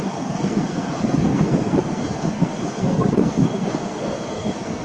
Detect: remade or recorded remade